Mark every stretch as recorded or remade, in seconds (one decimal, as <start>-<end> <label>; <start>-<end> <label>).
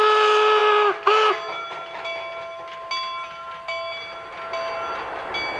0.0-5.6 recorded